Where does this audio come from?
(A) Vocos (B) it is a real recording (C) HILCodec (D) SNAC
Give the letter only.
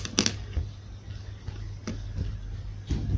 B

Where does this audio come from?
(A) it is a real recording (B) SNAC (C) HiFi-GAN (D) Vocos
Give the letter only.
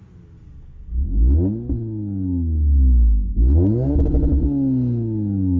A